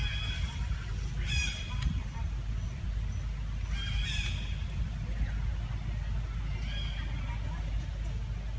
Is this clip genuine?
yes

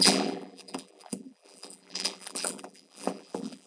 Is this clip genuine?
no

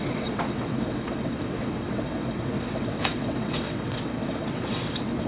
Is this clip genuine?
no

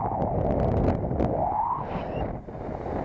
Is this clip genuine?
yes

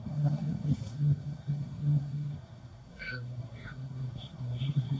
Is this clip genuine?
no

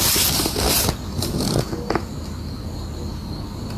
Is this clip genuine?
yes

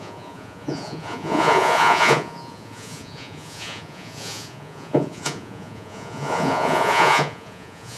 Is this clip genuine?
no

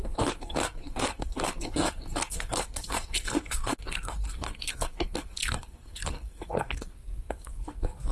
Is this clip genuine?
no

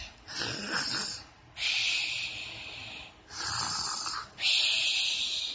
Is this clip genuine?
yes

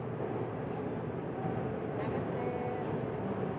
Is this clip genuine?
yes